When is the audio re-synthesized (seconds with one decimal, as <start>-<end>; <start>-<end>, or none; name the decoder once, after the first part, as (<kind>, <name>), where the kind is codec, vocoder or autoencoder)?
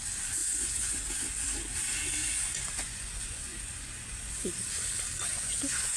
0.4-1.1 (vocoder, Vocos); 2.2-4.5; 5.3-6.0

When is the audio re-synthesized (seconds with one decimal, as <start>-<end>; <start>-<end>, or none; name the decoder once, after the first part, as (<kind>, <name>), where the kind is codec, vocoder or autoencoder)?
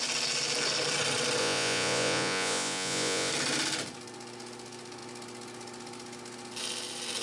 1.4-3.3 (vocoder, Vocos)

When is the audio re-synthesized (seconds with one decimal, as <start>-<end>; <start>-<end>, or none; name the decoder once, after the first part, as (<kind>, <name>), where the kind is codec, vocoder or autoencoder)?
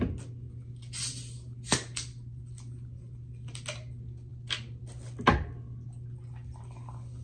none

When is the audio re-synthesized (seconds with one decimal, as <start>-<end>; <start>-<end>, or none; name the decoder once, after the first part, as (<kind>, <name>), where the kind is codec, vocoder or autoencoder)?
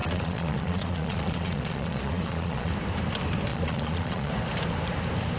0.0-2.7 (vocoder, Vocos); 3.5-4.3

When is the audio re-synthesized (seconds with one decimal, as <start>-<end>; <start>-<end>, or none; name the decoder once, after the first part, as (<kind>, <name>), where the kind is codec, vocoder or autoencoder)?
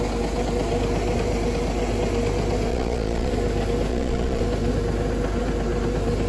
2.7-3.3 (vocoder, Vocos); 3.9-4.4